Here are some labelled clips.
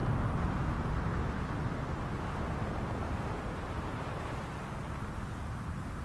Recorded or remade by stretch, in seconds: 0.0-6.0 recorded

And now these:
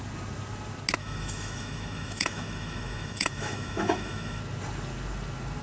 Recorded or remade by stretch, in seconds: 0.0-1.0 recorded; 1.0-4.4 remade; 4.4-5.6 recorded

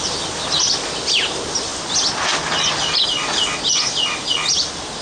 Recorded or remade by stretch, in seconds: 0.0-5.0 recorded

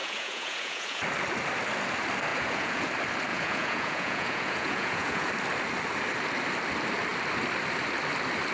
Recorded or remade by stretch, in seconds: 0.0-1.0 remade; 1.0-2.3 recorded; 2.3-2.9 remade; 2.9-3.3 recorded; 3.3-5.3 remade; 5.3-8.5 recorded

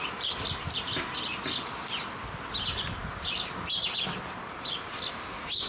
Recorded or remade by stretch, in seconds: 0.0-5.7 recorded

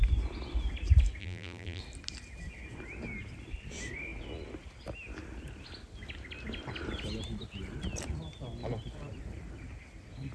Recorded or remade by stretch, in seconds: 0.0-1.2 recorded; 1.2-1.8 remade; 1.8-10.3 recorded

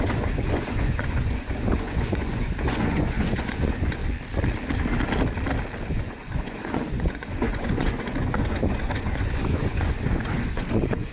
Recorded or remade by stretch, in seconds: 0.0-4.0 remade; 4.0-5.9 recorded; 5.9-11.1 remade

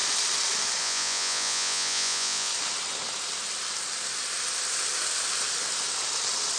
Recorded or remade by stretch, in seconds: 0.0-0.8 recorded; 0.8-2.5 remade; 2.5-6.6 recorded